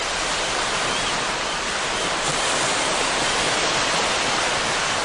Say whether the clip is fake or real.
real